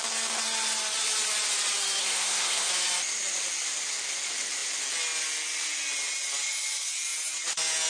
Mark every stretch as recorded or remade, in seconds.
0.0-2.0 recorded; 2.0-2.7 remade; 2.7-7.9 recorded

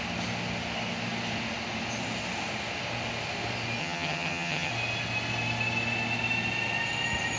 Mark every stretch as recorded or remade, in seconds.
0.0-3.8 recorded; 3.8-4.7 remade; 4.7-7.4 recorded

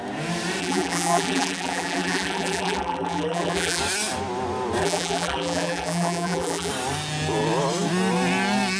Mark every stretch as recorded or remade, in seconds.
0.0-0.6 recorded; 0.6-3.8 remade; 3.8-4.8 recorded; 4.8-6.7 remade; 6.7-8.8 recorded